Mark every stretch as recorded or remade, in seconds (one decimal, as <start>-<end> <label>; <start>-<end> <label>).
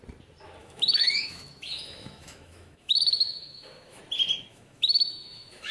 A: 0.0-0.6 recorded; 0.6-4.0 remade; 4.0-4.5 recorded; 4.5-5.7 remade